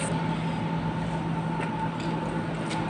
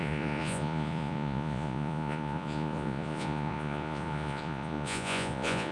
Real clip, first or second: first